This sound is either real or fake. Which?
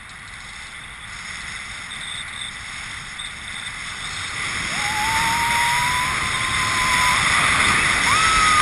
real